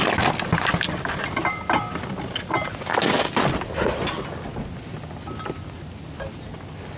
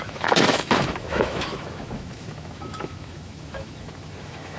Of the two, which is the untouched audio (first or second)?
first